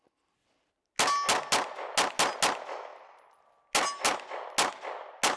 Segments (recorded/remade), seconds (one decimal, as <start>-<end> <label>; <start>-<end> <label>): 0.0-5.4 recorded

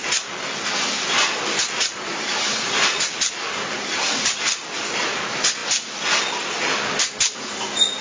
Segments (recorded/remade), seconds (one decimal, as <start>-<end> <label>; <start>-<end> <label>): 0.0-4.8 remade; 4.8-8.0 recorded

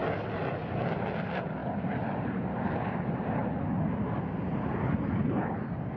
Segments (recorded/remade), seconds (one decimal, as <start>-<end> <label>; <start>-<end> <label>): 0.0-1.2 recorded; 1.2-3.4 remade; 3.4-4.4 recorded; 4.4-6.0 remade

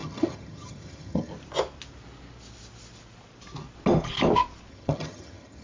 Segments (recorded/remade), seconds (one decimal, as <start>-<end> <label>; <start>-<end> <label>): 0.0-1.3 remade; 1.3-4.7 recorded; 4.7-5.6 remade

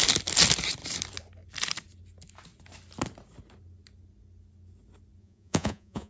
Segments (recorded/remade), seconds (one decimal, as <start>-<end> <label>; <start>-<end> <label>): 0.0-5.2 recorded; 5.2-6.1 remade

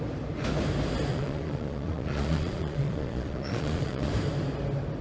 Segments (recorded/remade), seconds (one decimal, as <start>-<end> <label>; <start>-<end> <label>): 0.0-1.1 recorded; 1.1-4.1 remade; 4.1-5.0 recorded

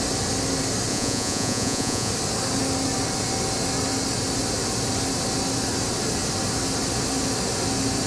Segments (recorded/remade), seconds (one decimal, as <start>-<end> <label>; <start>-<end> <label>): 0.0-0.9 recorded; 0.9-2.1 remade; 2.1-8.1 recorded